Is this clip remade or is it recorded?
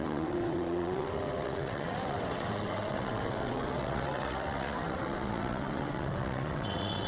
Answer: remade